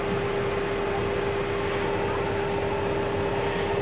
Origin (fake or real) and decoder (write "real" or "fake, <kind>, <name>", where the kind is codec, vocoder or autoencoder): real